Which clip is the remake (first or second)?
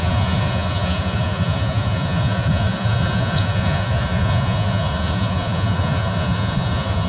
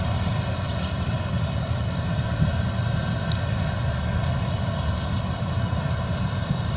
first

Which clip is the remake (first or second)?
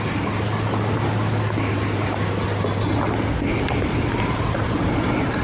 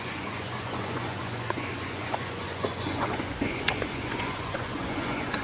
second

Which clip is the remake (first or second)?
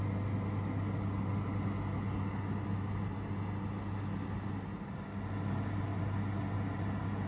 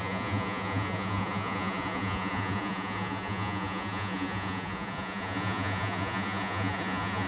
second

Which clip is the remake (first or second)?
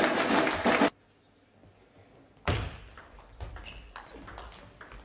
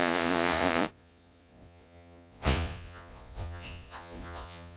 second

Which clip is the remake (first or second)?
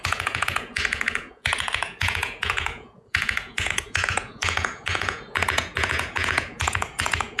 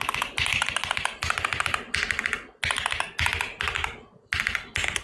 first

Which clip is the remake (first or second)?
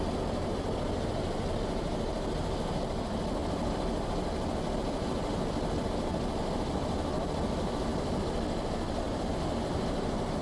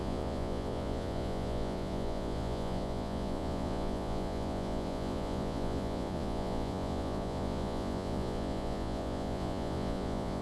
second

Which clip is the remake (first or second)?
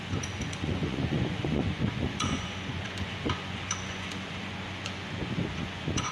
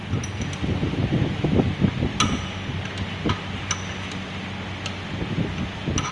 first